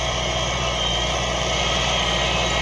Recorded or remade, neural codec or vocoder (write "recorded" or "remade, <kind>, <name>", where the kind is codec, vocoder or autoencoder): recorded